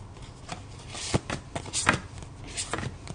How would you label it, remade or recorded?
recorded